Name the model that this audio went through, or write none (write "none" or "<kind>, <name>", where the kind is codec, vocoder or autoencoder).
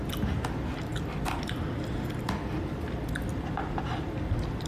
none